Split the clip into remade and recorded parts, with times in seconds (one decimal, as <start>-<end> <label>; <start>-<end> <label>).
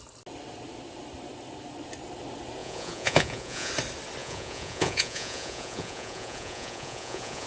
0.0-2.6 recorded; 2.6-3.7 remade; 3.7-4.2 recorded; 4.2-7.5 remade